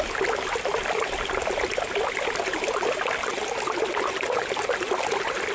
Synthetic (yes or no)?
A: no